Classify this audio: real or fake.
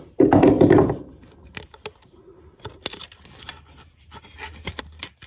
real